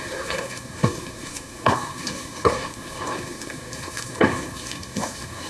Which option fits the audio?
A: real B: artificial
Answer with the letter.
B